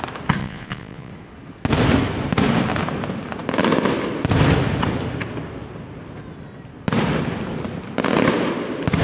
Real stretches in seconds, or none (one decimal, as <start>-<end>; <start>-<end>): 0.0-0.4; 1.1-9.0